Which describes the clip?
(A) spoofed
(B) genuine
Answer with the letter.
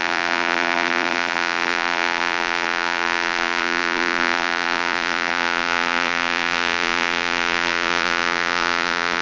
A